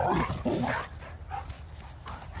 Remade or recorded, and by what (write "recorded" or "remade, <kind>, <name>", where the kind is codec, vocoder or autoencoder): recorded